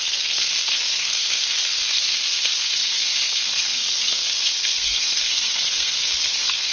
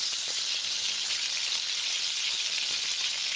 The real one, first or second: second